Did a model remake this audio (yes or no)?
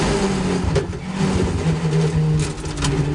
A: no